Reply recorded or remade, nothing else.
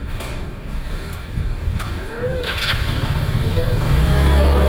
remade